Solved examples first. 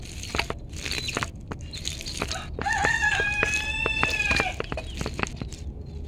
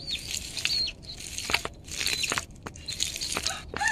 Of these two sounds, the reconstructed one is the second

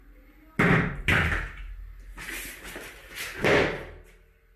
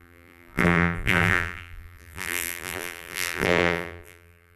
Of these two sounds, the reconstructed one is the second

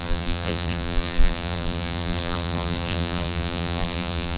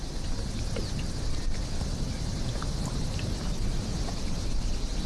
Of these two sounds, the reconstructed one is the first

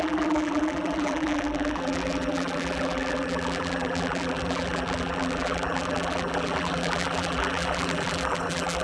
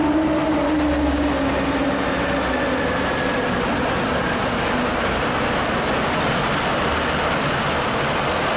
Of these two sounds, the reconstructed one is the first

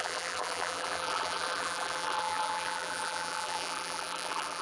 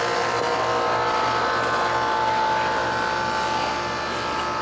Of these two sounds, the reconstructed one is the first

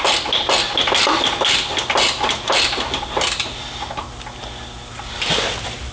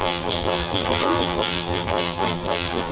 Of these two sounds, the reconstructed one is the second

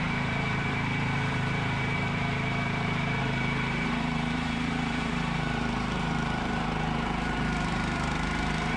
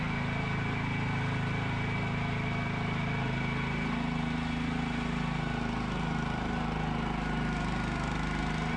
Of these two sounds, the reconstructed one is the first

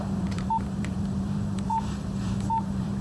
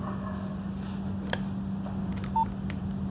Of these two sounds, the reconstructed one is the first